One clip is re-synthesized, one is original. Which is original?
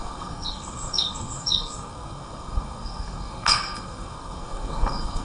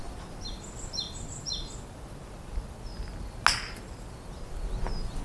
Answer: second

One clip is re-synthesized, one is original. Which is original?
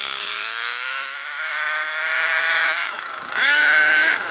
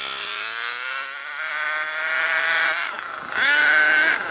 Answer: second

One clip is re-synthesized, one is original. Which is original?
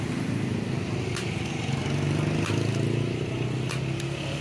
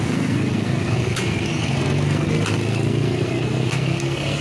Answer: first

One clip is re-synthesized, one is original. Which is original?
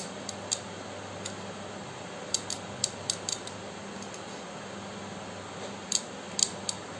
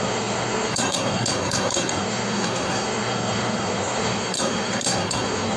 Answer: first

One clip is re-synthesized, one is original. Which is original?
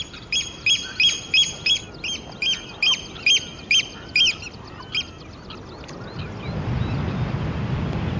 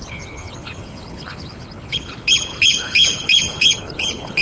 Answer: first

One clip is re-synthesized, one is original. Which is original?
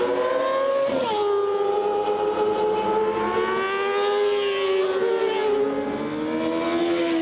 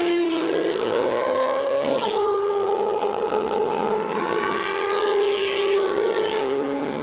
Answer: first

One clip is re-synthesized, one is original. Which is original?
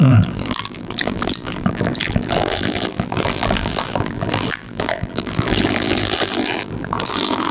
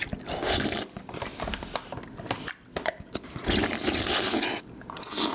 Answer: second